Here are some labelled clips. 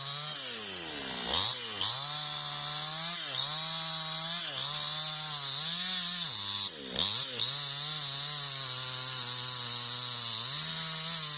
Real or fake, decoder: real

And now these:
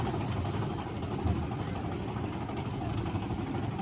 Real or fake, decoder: real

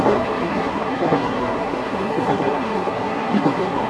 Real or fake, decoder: fake, codec, SNAC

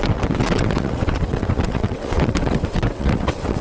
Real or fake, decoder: fake, vocoder, WaveNeXt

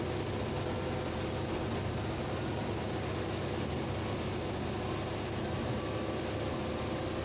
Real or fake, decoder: real